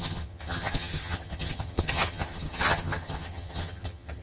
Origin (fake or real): fake